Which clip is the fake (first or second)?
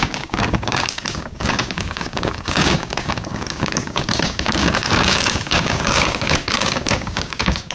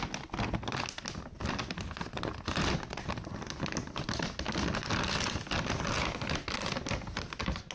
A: first